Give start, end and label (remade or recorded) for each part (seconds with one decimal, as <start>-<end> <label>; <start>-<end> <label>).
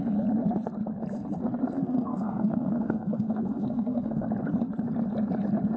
0.0-1.8 recorded; 1.8-4.3 remade; 4.3-5.8 recorded